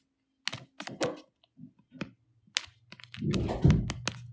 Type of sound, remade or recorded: recorded